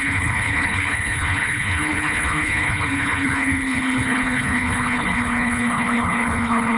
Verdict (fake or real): fake